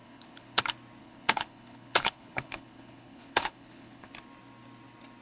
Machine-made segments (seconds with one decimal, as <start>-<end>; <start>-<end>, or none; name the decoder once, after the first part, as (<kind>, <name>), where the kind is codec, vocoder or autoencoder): 0.0-0.6 (codec, HILCodec); 1.0-4.1